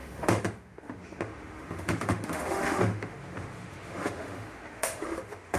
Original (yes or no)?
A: no